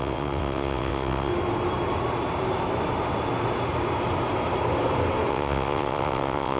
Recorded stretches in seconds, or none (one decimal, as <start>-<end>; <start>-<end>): 1.3-5.3